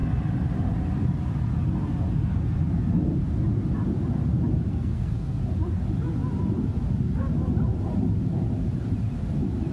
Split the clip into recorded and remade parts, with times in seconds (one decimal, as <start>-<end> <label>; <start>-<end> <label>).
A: 0.0-4.7 recorded; 4.7-5.4 remade; 5.4-9.7 recorded